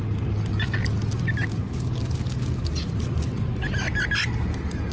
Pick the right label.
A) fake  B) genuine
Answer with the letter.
B